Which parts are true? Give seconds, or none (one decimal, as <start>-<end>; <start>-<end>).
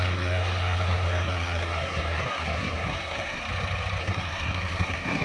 3.4-4.0